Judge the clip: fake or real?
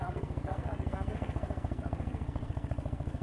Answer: fake